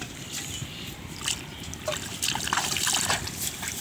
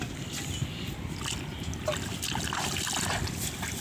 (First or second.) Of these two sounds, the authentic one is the second